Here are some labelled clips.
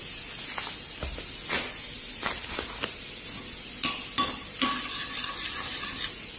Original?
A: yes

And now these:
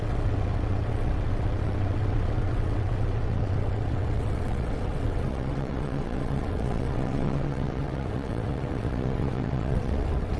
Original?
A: no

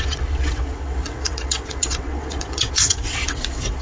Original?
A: no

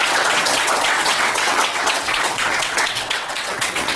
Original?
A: no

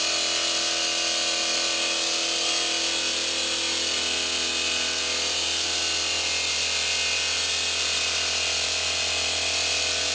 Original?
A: yes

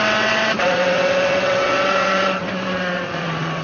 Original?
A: no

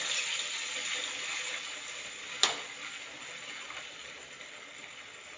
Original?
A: yes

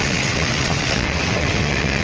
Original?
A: no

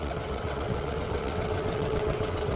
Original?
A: no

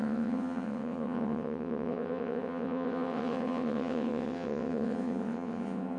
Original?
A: no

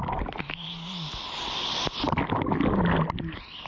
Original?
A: yes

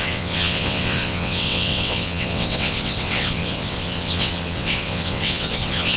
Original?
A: no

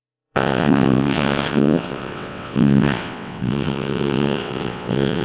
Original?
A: no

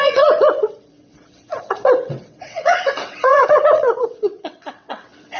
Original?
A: no